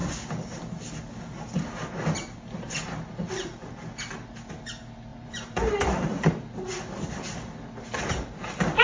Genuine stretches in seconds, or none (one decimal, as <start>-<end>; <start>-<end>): 0.0-5.1; 6.5-8.8